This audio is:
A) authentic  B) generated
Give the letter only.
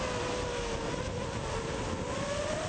A